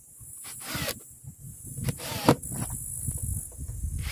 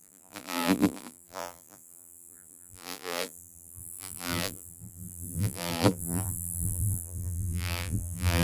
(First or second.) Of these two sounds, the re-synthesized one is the second